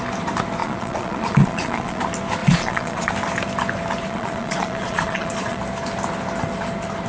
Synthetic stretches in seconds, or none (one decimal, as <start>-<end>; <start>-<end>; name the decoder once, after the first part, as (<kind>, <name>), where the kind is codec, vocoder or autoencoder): 0.6-2.0 (vocoder, Vocos); 2.4-3.1; 4.0-5.6